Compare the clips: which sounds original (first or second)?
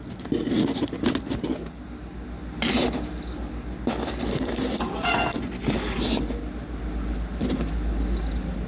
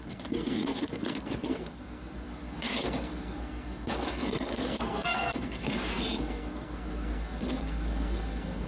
first